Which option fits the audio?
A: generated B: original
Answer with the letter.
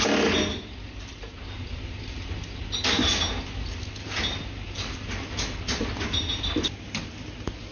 B